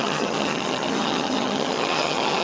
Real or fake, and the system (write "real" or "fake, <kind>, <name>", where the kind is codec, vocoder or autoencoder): fake, vocoder, HiFi-GAN